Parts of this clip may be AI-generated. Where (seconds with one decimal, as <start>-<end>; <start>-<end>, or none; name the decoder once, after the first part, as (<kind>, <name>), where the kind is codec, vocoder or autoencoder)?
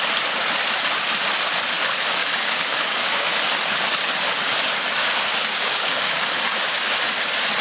2.2-3.3 (codec, DAC); 5.0-6.9